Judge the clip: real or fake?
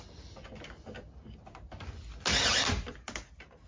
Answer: real